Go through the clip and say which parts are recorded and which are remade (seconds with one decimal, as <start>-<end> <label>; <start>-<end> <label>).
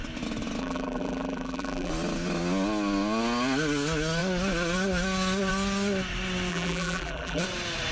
0.0-0.6 recorded; 0.6-1.9 remade; 1.9-6.5 recorded; 6.5-7.4 remade; 7.4-7.9 recorded